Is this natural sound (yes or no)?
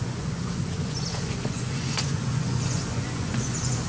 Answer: no